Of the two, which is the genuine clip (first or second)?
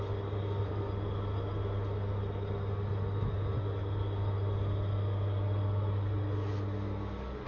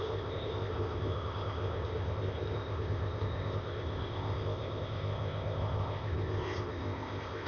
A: first